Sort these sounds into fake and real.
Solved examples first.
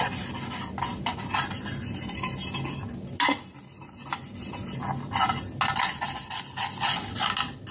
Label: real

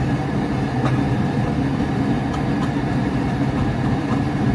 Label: real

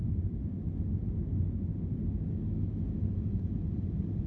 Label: real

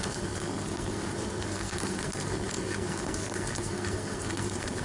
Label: fake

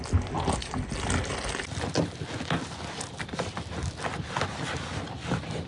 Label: real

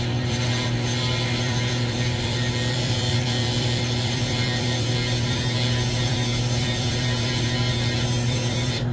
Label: fake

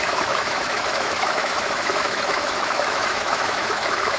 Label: fake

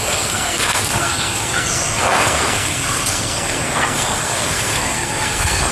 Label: fake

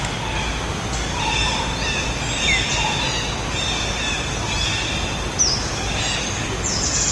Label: real